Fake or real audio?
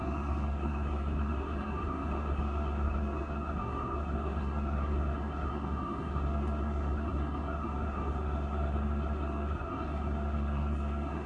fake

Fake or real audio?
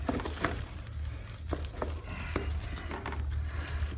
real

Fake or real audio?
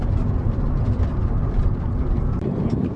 real